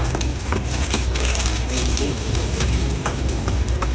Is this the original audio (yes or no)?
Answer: no